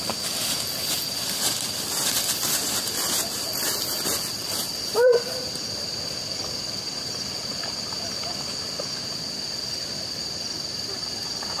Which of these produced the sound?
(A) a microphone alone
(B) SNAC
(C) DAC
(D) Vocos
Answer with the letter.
A